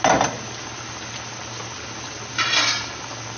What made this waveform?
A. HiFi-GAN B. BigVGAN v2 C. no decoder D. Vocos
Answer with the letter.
C